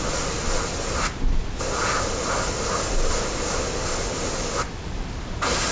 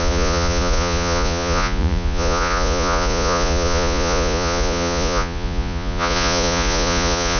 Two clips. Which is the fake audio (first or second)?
second